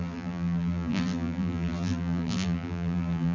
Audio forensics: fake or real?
fake